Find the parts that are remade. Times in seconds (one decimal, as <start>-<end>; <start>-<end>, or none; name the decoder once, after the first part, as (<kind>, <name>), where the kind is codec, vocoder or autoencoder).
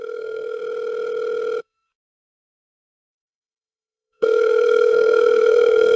0.0-0.6 (codec, SNAC); 1.6-6.0